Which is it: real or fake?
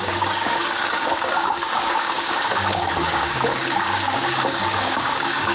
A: fake